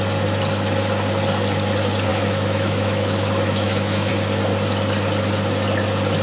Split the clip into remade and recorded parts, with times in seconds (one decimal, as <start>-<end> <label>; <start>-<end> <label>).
0.0-2.1 recorded; 2.1-4.1 remade; 4.1-6.2 recorded